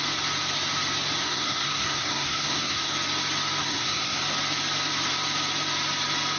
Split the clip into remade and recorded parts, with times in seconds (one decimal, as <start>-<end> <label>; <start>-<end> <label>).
0.0-1.2 recorded; 1.2-2.9 remade; 2.9-3.6 recorded; 3.6-4.2 remade; 4.2-6.4 recorded

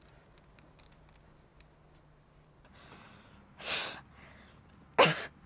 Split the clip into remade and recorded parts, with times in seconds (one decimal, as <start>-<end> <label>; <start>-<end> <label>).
0.0-5.5 recorded

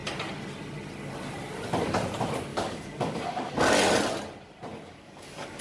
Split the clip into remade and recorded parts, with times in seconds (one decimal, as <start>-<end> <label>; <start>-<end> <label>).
0.0-2.5 recorded; 2.5-3.5 remade; 3.5-4.7 recorded; 4.7-5.6 remade

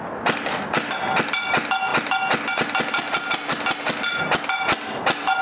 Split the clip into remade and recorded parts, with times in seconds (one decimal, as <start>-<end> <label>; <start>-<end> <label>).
0.0-5.4 recorded

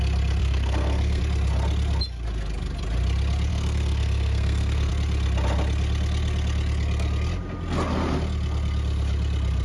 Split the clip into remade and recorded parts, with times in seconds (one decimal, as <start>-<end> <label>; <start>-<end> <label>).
0.0-0.4 recorded; 0.4-1.2 remade; 1.2-3.5 recorded; 3.5-4.9 remade; 4.9-9.6 recorded